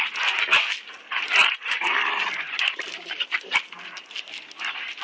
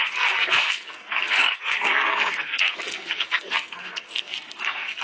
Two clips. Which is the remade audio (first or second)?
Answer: second